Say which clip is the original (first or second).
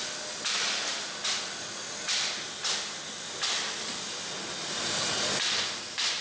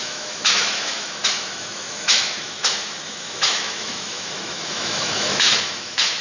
first